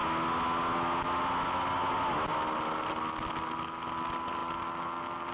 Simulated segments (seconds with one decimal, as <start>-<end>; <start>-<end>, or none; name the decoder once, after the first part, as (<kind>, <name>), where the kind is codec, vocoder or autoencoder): none

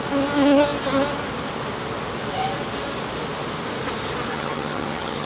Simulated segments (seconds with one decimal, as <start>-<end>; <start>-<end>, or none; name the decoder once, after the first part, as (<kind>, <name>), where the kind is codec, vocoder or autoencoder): 4.3-5.3 (vocoder, HiFi-GAN)

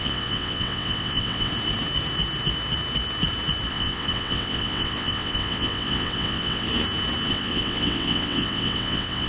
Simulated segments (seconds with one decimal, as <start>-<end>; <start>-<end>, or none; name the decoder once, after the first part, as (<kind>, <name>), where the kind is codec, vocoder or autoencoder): 0.0-1.5 (vocoder, WaveNeXt); 3.7-6.7; 7.3-9.3